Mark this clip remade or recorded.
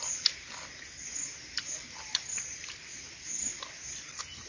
recorded